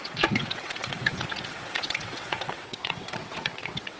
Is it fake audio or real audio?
fake